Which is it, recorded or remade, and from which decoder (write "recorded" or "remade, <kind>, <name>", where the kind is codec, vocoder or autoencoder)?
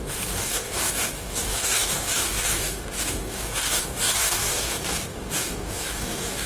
remade, codec, DAC